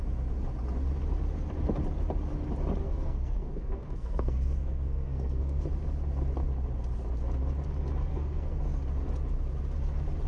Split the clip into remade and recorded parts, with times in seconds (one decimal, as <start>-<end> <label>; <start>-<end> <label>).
0.0-2.8 recorded; 2.8-5.7 remade; 5.7-8.1 recorded; 8.1-8.6 remade; 8.6-10.3 recorded